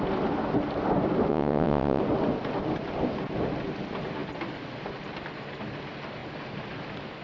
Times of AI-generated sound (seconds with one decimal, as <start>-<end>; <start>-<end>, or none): 1.3-2.0